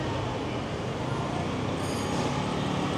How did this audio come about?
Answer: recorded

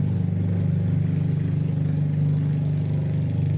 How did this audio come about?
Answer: recorded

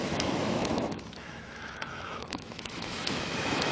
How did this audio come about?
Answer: remade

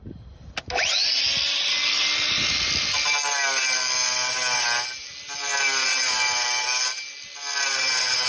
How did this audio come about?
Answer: recorded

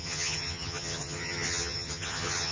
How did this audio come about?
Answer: remade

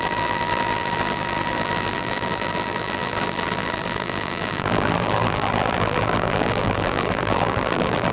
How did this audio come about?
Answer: remade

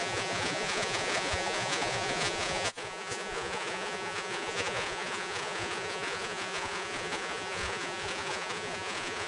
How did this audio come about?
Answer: remade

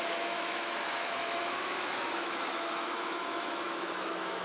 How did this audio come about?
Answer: remade